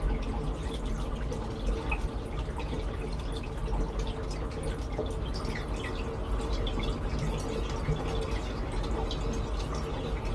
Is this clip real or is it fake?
real